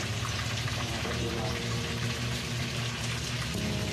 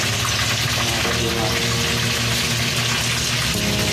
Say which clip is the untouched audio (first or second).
second